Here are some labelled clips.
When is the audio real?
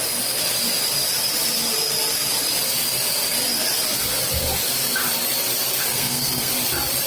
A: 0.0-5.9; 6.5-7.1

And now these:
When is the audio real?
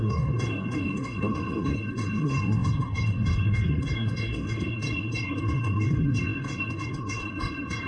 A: none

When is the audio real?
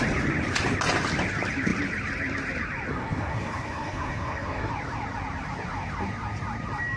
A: 0.0-2.9; 4.7-7.0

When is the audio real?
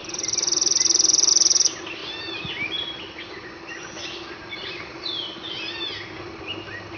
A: 0.0-7.0